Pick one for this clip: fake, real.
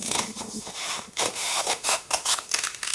fake